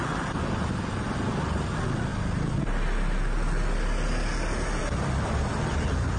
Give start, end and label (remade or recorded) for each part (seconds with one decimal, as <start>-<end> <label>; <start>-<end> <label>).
0.0-6.2 recorded